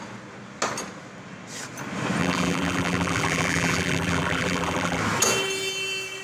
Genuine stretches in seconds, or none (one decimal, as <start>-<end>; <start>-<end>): 0.0-2.2; 5.0-6.2